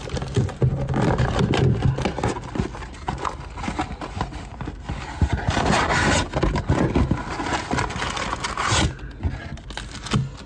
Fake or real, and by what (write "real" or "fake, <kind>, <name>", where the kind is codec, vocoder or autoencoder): real